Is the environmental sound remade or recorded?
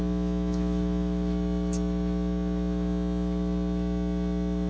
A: remade